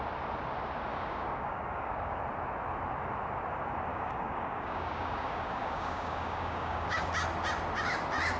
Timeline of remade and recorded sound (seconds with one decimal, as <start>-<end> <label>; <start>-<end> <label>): 0.0-0.9 recorded; 0.9-2.2 remade; 2.2-3.9 recorded; 3.9-7.1 remade; 7.1-8.4 recorded